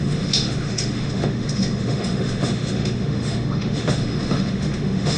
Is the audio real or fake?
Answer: fake